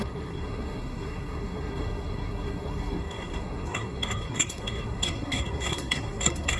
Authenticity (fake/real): fake